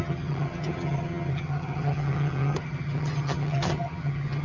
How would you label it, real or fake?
fake